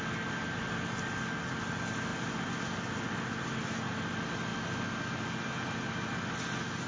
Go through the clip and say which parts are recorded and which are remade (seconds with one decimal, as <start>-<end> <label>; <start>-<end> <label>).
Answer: 0.0-6.9 recorded